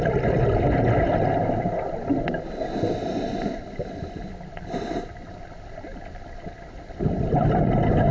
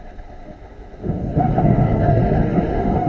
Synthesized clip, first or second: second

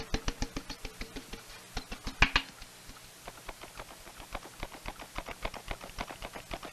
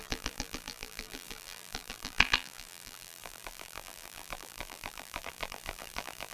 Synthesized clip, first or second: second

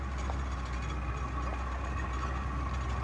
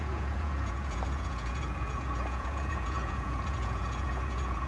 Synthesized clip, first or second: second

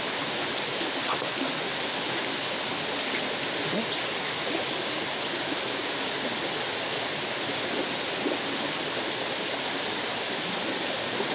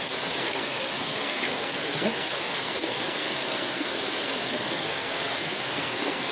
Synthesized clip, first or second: second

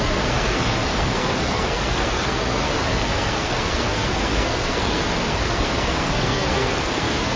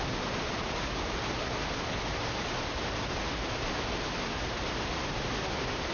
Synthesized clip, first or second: first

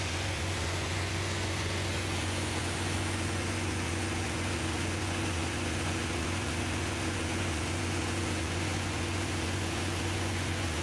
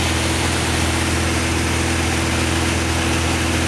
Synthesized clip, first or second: first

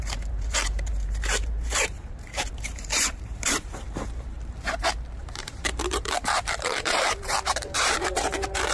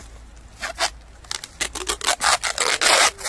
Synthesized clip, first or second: first